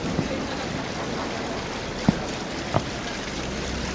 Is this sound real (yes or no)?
yes